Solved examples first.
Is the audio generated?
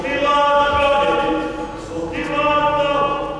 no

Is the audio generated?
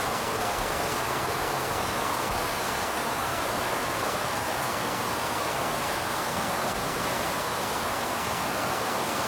yes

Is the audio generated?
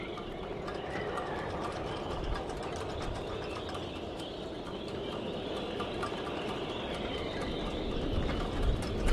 no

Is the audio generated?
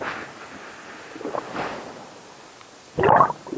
no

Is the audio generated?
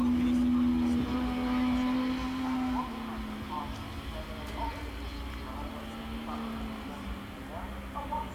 no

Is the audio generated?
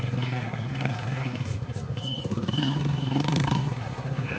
yes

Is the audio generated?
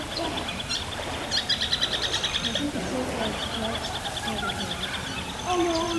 no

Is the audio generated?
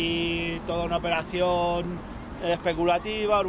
no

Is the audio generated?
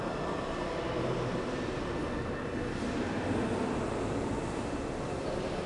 no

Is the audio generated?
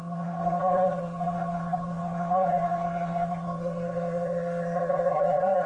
yes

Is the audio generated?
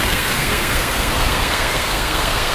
yes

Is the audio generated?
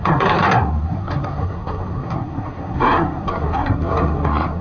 yes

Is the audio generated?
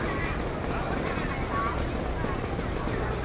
no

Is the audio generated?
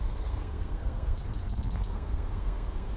yes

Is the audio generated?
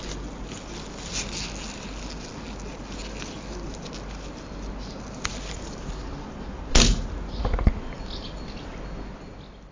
no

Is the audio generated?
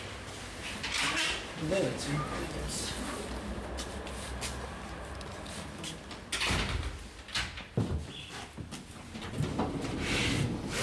no